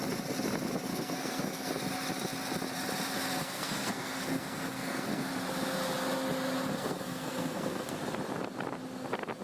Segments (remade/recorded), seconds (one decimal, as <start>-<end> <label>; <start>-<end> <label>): 0.0-0.9 recorded; 0.9-1.8 remade; 1.8-3.4 recorded; 3.4-5.3 remade; 5.3-6.7 recorded; 6.7-8.0 remade; 8.0-9.4 recorded

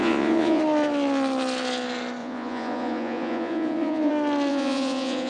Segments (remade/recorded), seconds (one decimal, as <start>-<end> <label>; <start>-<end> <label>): 0.0-0.6 remade; 0.6-2.2 recorded; 2.2-4.1 remade; 4.1-4.5 recorded; 4.5-5.3 remade